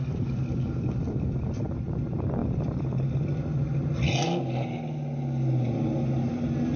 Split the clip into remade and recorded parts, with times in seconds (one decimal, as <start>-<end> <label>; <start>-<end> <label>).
0.0-6.8 recorded